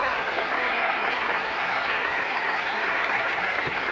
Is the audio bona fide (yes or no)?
no